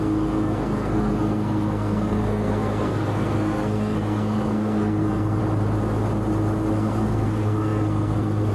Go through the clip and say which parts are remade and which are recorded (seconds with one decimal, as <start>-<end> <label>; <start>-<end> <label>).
0.0-5.4 remade; 5.4-6.7 recorded; 6.7-8.5 remade